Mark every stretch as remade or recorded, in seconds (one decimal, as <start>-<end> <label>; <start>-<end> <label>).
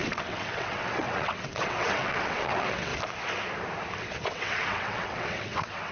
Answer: 0.0-2.9 remade; 2.9-4.0 recorded; 4.0-5.9 remade